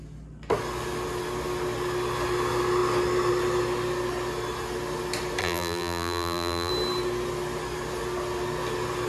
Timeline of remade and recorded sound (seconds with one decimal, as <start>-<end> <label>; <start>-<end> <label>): 0.0-5.4 recorded; 5.4-6.7 remade; 6.7-9.1 recorded